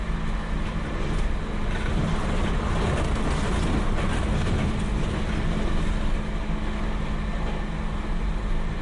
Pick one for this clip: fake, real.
real